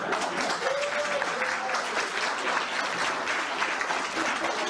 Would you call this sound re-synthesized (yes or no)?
no